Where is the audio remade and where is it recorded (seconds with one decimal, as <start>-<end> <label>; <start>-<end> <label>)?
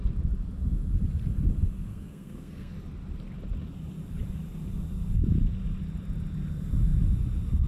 0.0-1.9 recorded; 1.9-2.7 remade; 2.7-7.7 recorded